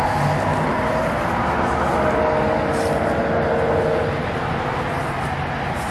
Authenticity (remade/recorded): recorded